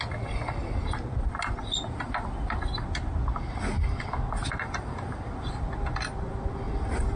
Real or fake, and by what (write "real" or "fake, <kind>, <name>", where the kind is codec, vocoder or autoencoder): real